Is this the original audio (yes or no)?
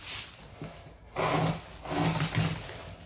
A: yes